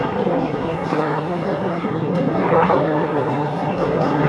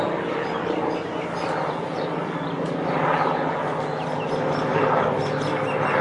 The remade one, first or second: first